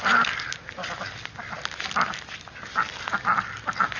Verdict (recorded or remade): recorded